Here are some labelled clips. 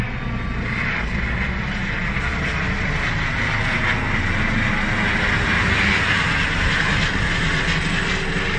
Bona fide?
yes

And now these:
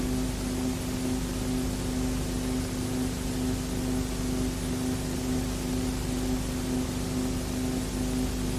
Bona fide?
yes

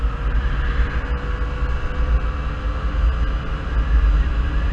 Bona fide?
yes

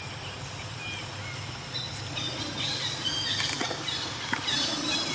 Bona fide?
yes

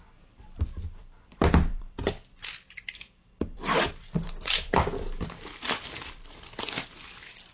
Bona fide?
no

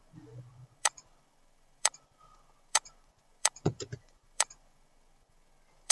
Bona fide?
no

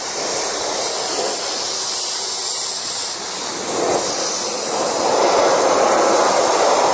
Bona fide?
yes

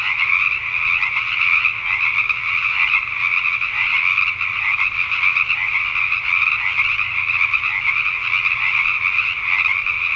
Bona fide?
yes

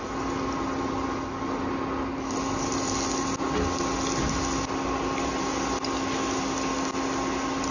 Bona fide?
yes